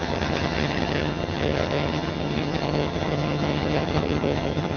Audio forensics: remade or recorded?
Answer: remade